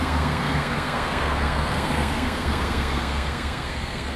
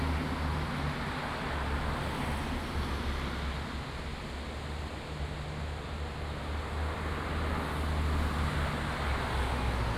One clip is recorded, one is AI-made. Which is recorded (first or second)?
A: second